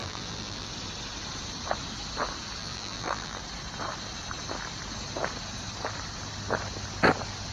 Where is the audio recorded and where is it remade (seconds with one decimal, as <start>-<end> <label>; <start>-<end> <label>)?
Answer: 0.0-0.7 remade; 0.7-2.6 recorded; 2.6-3.4 remade; 3.4-7.5 recorded